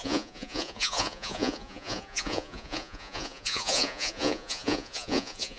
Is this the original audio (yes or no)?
no